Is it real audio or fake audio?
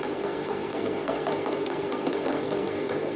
fake